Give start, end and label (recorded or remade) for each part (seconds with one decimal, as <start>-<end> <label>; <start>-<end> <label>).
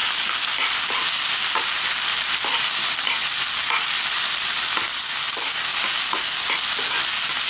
0.0-3.0 remade; 3.0-7.5 recorded